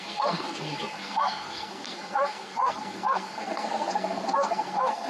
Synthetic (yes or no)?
yes